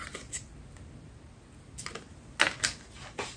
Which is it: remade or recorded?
recorded